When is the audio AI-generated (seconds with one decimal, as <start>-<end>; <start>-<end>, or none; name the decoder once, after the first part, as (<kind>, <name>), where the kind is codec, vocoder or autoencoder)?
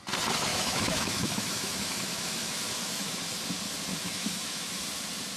0.5-3.2 (autoencoder, DAC-VAE); 3.9-4.8